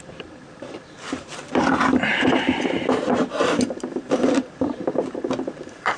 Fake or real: fake